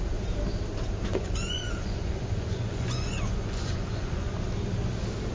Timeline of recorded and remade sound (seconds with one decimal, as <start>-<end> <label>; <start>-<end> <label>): 0.0-1.1 recorded; 1.1-4.3 remade; 4.3-5.3 recorded